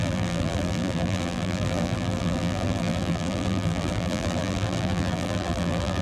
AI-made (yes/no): yes